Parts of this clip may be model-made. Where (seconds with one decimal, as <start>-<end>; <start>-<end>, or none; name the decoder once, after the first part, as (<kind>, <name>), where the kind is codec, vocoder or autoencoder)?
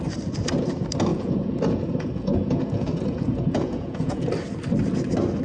1.1-4.3 (vocoder, Vocos)